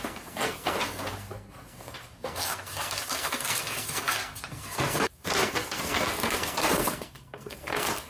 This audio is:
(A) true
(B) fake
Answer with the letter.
B